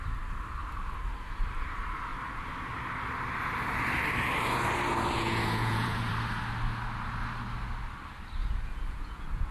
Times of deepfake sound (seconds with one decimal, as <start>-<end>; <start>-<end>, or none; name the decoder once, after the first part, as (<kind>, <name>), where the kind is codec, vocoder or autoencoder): 4.9-6.1 (vocoder, Vocos); 8.4-9.5